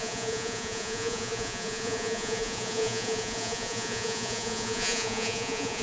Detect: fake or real fake